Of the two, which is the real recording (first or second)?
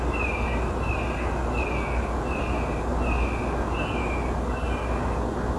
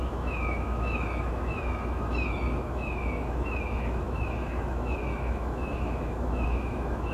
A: first